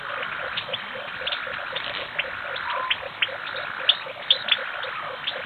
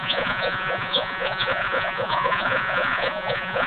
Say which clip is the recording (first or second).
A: first